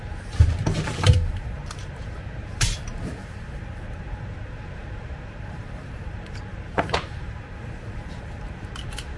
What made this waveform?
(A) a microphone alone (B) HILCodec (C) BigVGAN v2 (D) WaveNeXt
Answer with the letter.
C